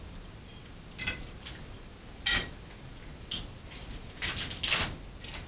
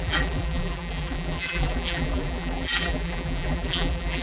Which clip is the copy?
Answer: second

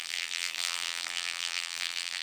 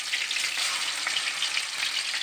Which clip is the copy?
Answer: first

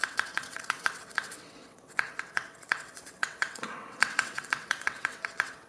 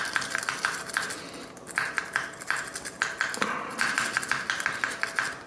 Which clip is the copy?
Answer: first